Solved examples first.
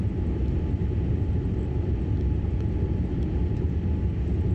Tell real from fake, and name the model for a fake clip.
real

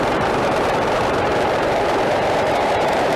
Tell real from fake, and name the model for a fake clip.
fake, vocoder, BigVGAN v2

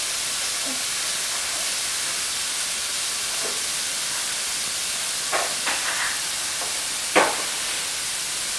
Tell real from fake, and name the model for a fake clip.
real